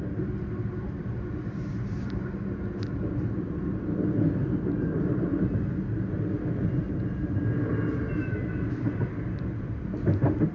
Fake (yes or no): no